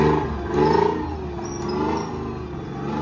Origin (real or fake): real